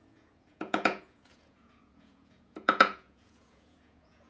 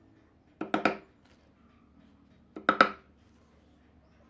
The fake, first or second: first